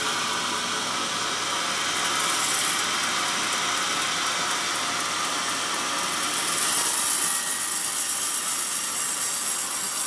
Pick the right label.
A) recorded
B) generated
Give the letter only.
A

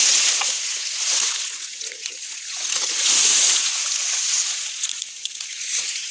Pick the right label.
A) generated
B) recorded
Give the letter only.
A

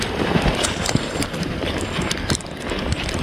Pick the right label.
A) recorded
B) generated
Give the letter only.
A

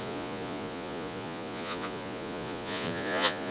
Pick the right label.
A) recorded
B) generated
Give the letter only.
B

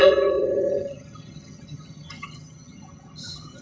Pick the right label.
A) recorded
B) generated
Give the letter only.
B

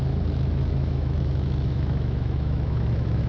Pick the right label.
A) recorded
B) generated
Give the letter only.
B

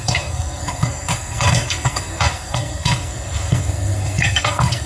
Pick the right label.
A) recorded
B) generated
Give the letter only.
B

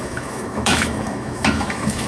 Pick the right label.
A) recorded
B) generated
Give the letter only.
B